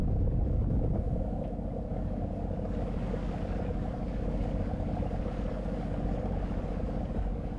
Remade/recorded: remade